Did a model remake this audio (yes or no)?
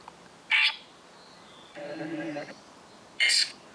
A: no